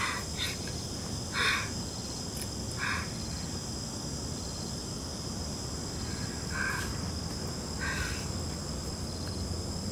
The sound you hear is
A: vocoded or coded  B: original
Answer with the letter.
B